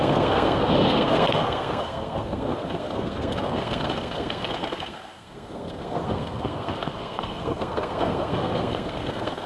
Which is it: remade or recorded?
remade